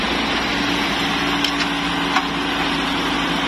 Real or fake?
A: real